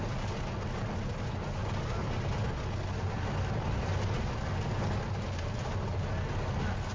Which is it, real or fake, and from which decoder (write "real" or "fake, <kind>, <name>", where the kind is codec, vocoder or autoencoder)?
real